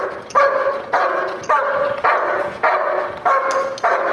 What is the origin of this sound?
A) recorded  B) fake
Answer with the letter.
A